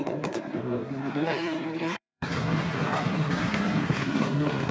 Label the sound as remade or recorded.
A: remade